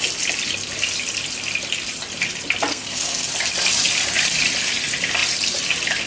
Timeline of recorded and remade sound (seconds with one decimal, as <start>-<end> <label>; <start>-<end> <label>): 0.0-2.7 recorded; 2.7-3.3 remade; 3.3-6.1 recorded